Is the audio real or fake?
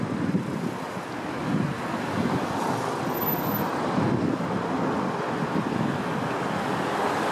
real